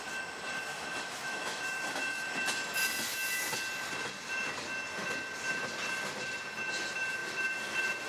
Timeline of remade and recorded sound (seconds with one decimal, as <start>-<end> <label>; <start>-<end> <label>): 0.0-0.7 recorded; 0.7-1.6 remade; 1.6-8.1 recorded